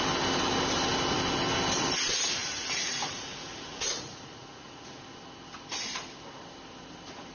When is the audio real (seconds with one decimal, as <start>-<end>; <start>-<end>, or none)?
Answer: 0.0-2.4; 4.9-7.3